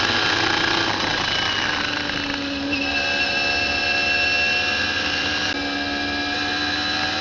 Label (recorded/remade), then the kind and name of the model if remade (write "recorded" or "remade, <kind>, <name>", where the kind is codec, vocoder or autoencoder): recorded